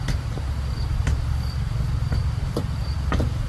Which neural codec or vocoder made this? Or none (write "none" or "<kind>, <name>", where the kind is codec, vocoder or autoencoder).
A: none